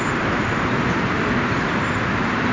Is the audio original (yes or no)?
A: yes